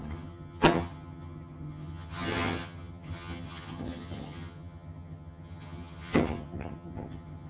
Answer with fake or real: fake